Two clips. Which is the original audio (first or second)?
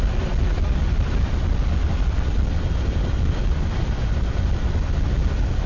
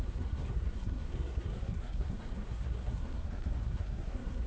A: first